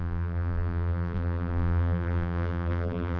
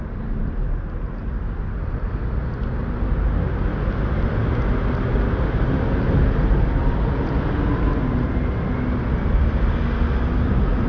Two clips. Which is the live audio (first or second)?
second